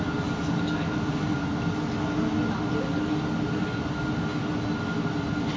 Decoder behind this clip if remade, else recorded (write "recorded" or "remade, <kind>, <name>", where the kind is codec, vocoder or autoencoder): recorded